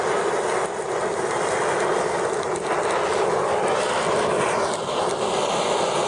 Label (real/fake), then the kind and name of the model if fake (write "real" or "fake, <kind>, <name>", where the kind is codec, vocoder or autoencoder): real